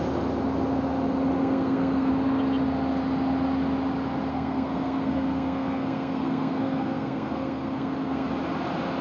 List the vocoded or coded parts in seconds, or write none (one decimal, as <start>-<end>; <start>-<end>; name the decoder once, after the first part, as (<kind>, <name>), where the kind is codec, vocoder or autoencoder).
1.4-2.1 (codec, SNAC); 4.3-8.3

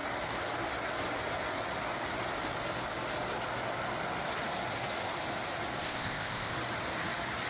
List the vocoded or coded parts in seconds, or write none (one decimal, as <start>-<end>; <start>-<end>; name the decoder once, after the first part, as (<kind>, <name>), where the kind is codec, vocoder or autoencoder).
5.8-6.5 (codec, ZipCodec)

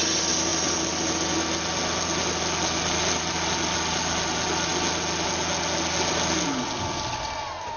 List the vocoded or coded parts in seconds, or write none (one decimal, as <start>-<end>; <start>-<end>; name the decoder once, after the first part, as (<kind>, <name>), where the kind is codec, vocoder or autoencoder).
none

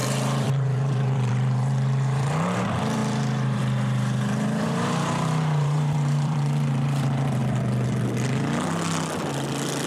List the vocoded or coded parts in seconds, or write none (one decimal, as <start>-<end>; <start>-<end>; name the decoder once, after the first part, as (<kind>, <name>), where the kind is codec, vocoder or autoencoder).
0.0-7.4 (vocoder, BigVGAN v2)

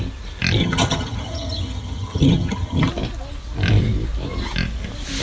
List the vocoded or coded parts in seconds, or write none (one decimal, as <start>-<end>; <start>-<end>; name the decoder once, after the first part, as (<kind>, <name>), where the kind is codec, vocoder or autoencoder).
0.6-2.9 (vocoder, HiFi-GAN)